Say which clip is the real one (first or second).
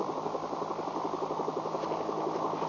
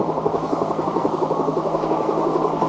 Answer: first